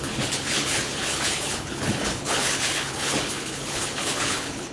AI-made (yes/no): yes